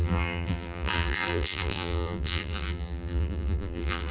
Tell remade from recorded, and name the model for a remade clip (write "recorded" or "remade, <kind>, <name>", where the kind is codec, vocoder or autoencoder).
remade, vocoder, BigVGAN v2